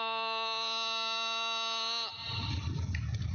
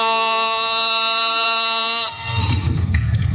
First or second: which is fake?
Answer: second